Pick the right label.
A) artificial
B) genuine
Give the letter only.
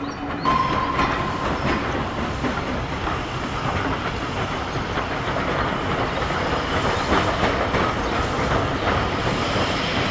B